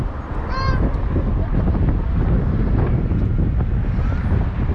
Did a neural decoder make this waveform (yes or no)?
no